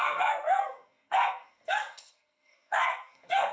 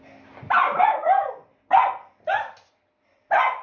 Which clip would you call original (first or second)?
second